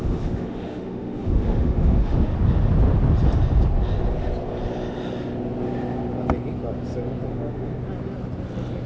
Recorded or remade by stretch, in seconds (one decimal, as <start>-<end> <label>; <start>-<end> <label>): 0.0-2.3 remade; 2.3-7.3 recorded; 7.3-7.7 remade; 7.7-8.9 recorded